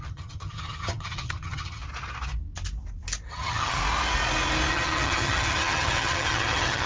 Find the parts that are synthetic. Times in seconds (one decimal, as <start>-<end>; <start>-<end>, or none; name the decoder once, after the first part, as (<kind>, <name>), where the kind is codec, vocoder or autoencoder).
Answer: 0.0-1.8 (vocoder, HiFi-GAN); 3.3-3.8; 4.7-6.9